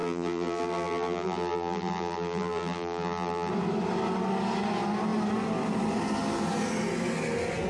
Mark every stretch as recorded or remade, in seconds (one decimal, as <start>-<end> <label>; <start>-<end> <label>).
0.0-3.5 remade; 3.5-7.7 recorded